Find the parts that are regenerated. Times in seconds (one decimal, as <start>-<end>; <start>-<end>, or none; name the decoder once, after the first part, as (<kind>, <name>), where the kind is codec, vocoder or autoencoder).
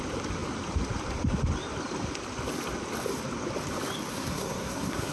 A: 4.1-5.1 (codec, SNAC)